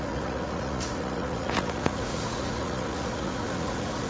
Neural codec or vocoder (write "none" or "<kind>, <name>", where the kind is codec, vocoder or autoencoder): vocoder, Vocos